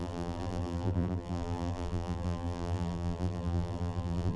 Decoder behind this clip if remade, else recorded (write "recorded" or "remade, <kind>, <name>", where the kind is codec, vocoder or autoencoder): remade, vocoder, BigVGAN v2